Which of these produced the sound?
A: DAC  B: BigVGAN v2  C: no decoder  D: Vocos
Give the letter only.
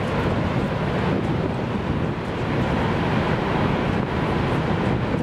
C